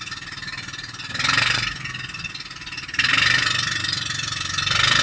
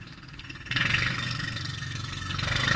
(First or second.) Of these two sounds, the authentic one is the first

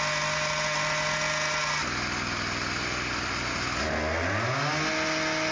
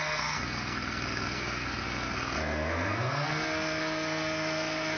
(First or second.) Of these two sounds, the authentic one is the first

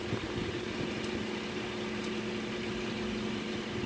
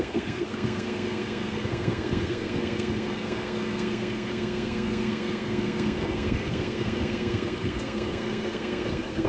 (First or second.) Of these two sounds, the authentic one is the first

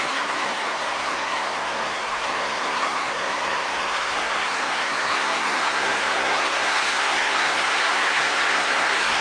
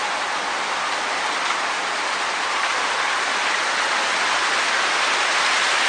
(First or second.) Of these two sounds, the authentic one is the second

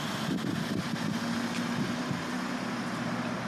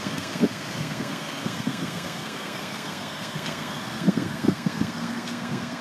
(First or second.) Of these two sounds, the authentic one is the first